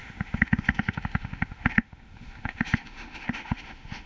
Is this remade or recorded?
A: remade